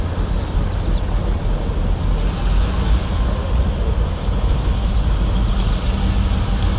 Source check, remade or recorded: recorded